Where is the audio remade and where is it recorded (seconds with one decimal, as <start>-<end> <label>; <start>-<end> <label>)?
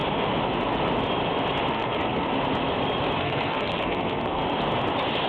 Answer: 0.0-1.7 recorded; 1.7-2.3 remade; 2.3-3.2 recorded; 3.2-4.4 remade; 4.4-5.3 recorded